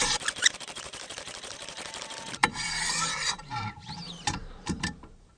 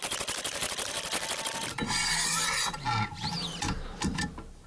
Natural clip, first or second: second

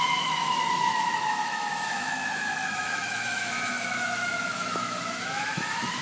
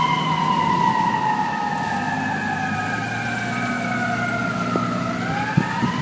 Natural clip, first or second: second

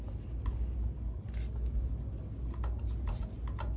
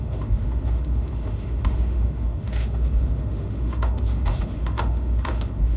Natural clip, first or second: first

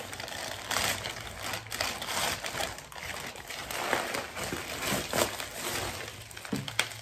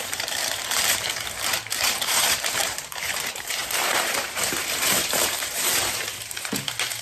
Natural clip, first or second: first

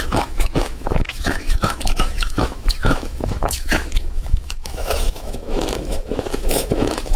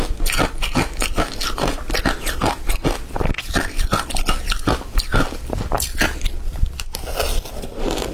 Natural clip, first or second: second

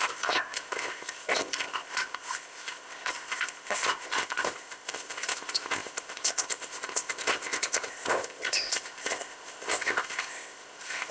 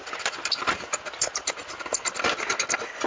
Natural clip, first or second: second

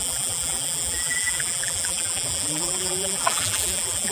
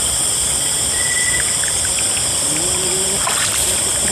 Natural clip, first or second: second